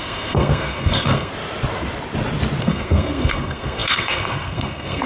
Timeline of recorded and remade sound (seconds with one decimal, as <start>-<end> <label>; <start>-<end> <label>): 0.0-1.3 remade; 1.3-2.6 recorded; 2.6-5.1 remade